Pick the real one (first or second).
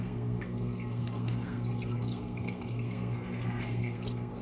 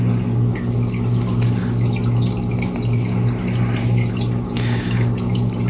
second